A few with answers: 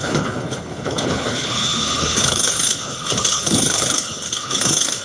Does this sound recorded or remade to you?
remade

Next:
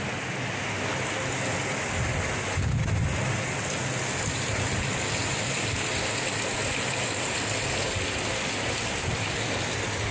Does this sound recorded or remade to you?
recorded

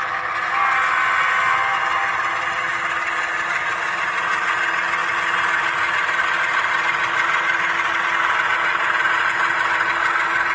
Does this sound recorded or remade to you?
recorded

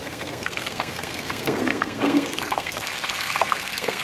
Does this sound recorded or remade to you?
remade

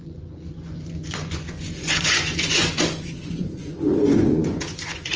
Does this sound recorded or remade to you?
remade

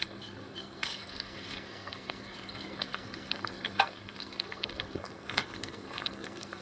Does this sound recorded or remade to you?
remade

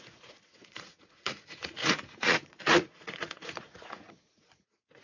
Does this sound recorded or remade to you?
remade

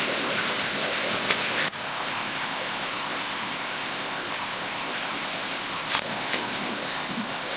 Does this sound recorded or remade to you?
remade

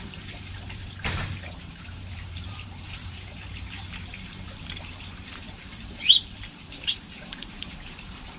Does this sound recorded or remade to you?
remade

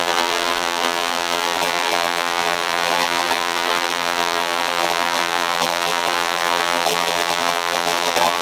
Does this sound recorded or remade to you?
remade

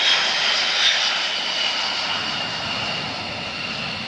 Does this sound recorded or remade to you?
recorded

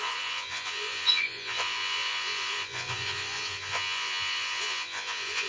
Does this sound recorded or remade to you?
remade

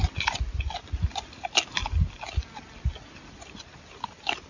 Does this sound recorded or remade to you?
recorded